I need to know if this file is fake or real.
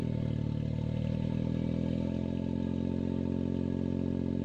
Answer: real